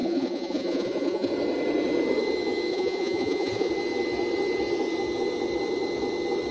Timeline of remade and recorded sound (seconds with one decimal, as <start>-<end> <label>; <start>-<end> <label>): 0.0-1.3 remade; 1.3-2.7 recorded; 2.7-3.7 remade; 3.7-6.5 recorded